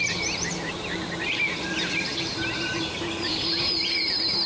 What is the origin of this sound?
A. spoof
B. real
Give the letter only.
A